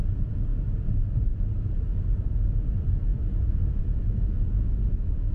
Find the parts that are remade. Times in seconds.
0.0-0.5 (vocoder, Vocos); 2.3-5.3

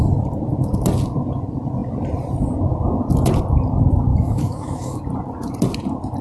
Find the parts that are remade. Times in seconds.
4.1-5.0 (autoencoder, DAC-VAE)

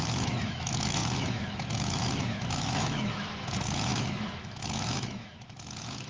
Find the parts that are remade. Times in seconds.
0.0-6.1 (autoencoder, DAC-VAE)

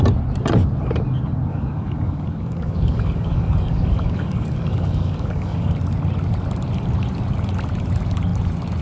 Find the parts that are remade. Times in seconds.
1.5-5.7 (codec, DAC)

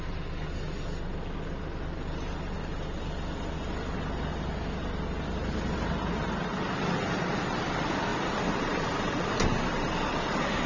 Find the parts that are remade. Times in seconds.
none

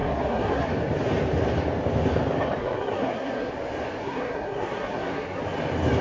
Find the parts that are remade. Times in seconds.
0.0-0.7 (codec, SNAC); 2.6-3.5; 4.0-5.4

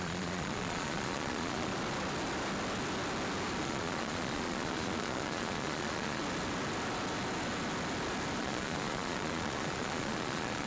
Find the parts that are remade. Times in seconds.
0.0-1.7 (vocoder, Vocos); 3.6-6.2; 8.4-10.7

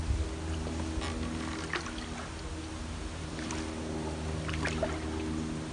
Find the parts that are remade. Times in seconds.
2.7-3.5 (vocoder, BigVGAN v2)